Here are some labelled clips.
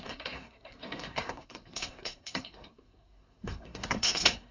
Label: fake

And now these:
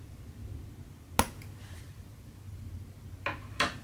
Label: real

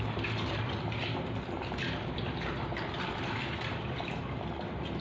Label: fake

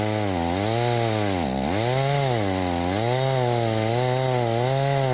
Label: real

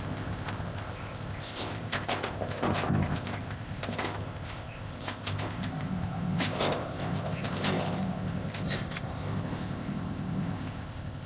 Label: fake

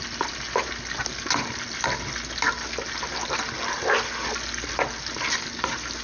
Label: real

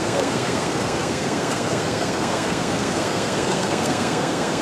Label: fake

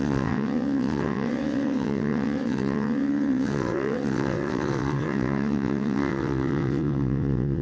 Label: fake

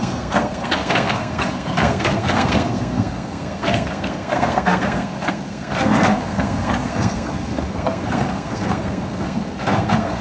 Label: fake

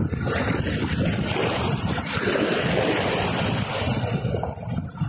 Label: fake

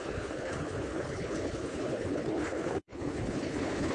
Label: fake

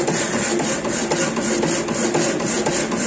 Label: real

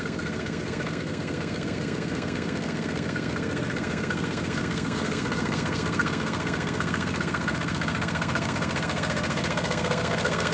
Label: fake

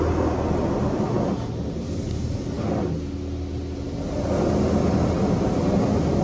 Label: real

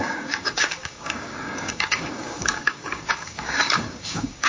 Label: fake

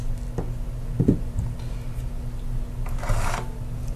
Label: real